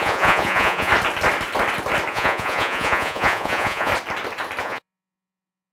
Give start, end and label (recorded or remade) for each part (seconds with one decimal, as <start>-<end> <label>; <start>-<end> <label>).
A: 0.0-0.9 remade; 0.9-2.1 recorded; 2.1-3.9 remade; 3.9-4.6 recorded; 4.6-5.7 remade

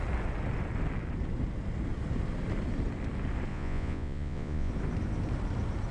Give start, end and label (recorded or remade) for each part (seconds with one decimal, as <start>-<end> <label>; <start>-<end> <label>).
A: 0.0-3.5 recorded; 3.5-4.7 remade; 4.7-5.9 recorded

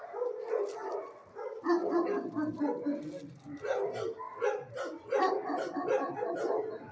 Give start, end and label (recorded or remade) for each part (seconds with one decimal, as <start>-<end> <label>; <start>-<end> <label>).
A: 0.0-6.9 recorded

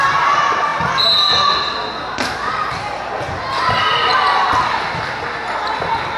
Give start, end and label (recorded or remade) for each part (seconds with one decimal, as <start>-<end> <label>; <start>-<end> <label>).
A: 0.0-6.2 recorded